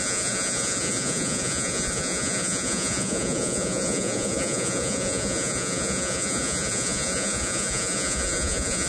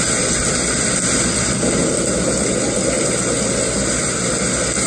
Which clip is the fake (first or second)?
first